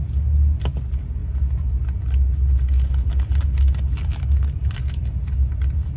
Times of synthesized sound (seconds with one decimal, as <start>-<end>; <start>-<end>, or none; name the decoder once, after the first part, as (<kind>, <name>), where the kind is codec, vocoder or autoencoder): none